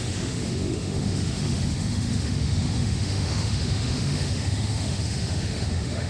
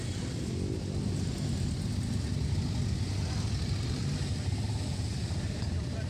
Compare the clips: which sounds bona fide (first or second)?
second